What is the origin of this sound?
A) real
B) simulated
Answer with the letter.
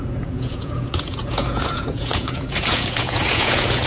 B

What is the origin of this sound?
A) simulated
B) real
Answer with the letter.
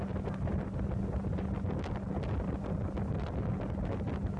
B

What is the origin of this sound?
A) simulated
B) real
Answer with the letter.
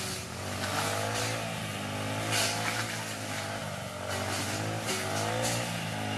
B